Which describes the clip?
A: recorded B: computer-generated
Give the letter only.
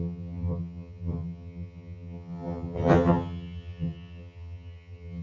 B